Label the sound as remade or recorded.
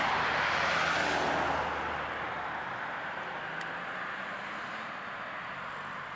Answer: recorded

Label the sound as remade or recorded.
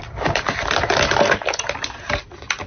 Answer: recorded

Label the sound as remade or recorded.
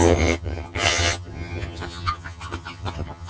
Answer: remade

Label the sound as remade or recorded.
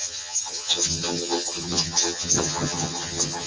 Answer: remade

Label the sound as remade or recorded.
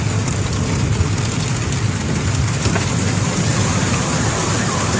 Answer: recorded